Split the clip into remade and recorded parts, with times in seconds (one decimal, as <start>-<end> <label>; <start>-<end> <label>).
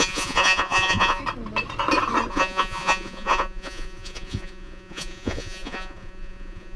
0.0-1.2 remade; 1.2-2.3 recorded; 2.3-6.8 remade